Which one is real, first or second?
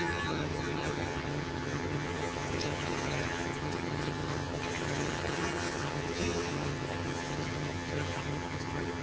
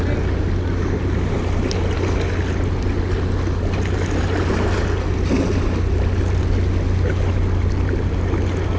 second